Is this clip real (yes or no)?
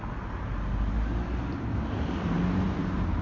yes